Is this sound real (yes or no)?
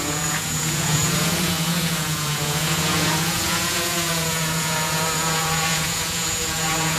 no